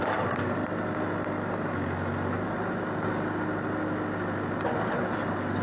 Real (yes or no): yes